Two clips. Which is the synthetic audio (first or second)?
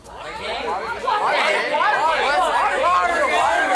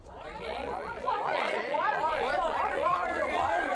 second